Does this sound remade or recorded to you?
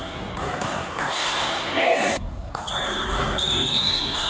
remade